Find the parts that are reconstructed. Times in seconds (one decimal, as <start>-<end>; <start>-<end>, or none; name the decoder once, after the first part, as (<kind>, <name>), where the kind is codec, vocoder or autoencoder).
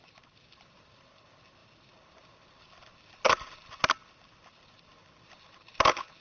none